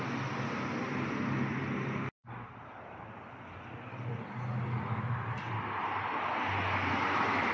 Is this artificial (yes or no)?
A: no